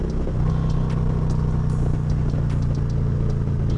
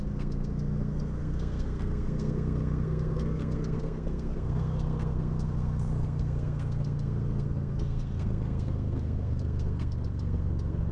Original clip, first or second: first